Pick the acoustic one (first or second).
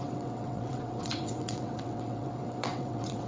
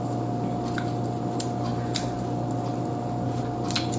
second